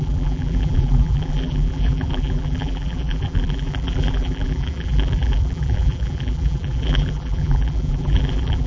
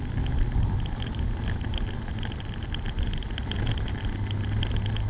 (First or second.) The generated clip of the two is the first